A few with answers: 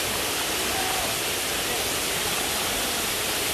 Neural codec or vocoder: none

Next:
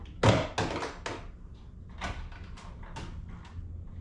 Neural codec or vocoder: none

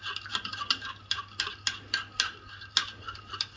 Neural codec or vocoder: none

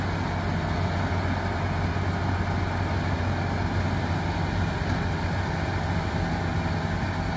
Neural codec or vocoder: none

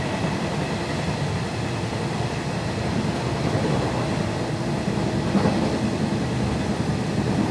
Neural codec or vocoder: none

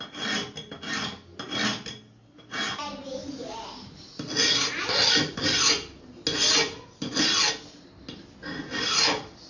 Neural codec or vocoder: none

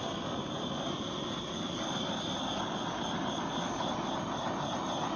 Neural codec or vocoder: none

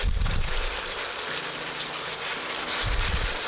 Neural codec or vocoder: none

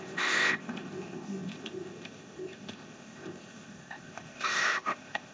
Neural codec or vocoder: codec, ZipCodec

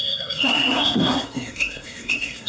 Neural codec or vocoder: codec, SNAC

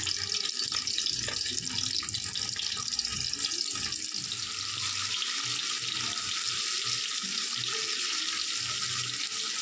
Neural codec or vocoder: none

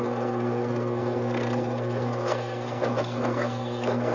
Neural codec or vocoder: codec, SNAC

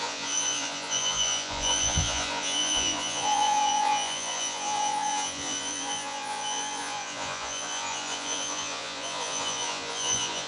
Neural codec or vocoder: vocoder, Vocos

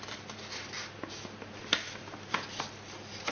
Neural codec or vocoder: none